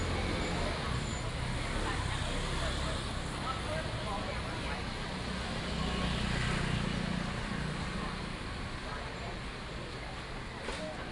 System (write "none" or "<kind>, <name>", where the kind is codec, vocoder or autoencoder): none